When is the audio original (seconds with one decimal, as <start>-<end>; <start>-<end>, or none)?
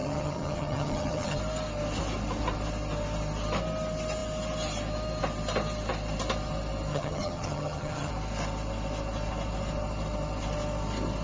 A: 1.4-6.9; 8.1-11.2